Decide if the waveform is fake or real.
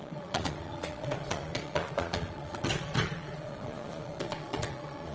fake